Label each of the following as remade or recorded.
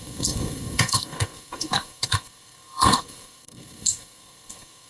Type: remade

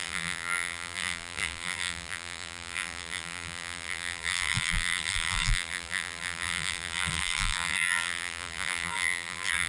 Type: remade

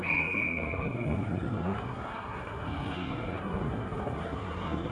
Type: remade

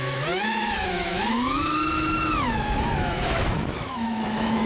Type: remade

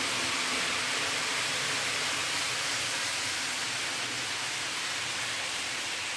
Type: recorded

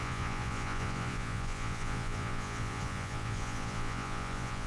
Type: remade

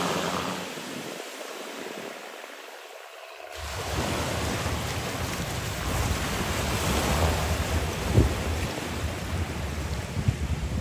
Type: remade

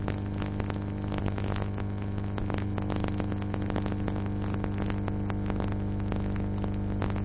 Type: recorded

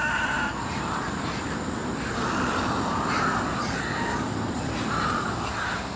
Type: remade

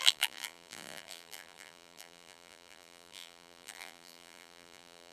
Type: remade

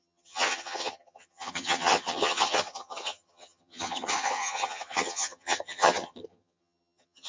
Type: remade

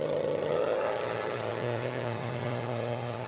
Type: remade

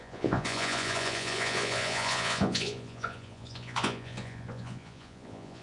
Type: remade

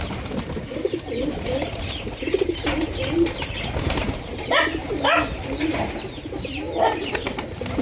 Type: recorded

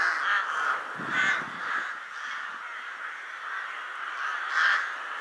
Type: recorded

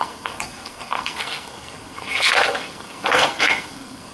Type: remade